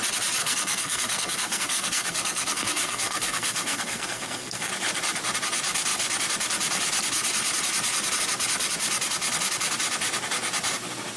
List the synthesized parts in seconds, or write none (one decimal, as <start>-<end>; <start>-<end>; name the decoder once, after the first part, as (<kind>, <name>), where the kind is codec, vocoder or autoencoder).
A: 0.4-4.7 (codec, SNAC)

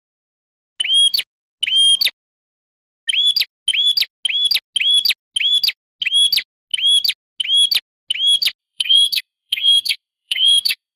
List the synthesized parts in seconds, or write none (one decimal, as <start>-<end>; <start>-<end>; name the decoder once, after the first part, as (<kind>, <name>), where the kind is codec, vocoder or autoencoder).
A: 8.6-11.0 (codec, SNAC)

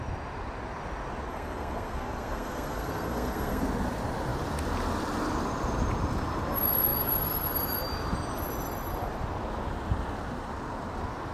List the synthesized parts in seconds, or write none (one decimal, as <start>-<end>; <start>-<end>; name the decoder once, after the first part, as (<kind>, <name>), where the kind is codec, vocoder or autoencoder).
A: 1.3-3.6 (codec, SNAC)

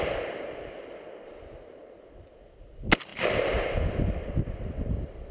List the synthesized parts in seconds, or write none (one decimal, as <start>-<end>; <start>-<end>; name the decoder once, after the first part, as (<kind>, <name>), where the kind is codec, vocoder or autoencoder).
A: none

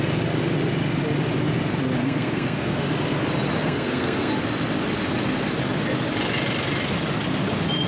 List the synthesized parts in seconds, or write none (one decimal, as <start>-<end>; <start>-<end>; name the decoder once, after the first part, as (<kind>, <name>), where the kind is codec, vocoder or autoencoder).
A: 2.0-2.9 (codec, SNAC); 3.6-4.3

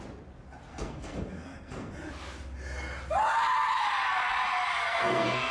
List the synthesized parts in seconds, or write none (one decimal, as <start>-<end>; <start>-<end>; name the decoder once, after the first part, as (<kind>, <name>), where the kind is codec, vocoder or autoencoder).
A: 0.7-1.9 (codec, SNAC); 4.8-5.5

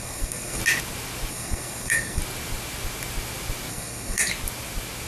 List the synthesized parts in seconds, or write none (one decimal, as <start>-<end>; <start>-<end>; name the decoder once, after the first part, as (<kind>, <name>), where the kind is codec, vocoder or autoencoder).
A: 0.0-0.6 (codec, SNAC); 1.3-2.2; 3.7-4.3

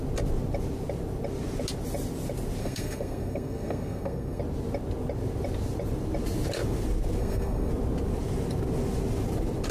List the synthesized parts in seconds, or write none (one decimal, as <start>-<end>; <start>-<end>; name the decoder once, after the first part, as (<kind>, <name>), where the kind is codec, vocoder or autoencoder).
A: 2.6-4.4 (codec, SNAC); 7.2-7.7